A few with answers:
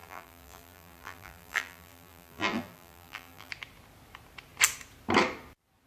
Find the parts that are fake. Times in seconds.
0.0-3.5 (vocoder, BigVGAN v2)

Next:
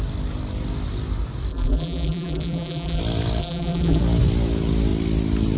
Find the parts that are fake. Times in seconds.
1.5-3.0 (vocoder, BigVGAN v2); 3.4-4.0